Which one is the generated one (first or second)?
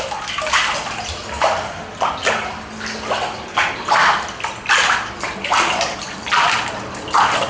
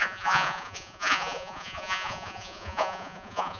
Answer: second